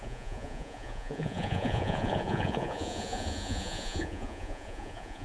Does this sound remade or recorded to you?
remade